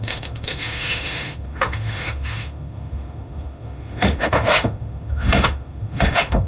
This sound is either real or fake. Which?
fake